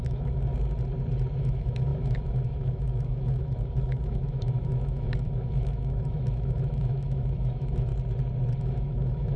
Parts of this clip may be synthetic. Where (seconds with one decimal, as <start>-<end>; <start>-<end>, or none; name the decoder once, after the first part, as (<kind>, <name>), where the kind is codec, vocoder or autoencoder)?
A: 0.0-0.5 (autoencoder, DAC-VAE); 1.4-7.9; 8.6-9.4